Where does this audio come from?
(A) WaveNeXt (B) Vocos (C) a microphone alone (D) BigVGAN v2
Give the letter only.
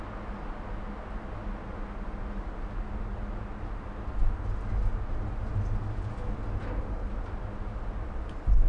C